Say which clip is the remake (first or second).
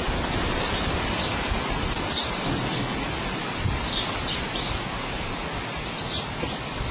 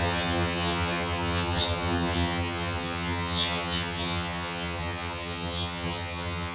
second